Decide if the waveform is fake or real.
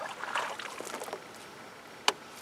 real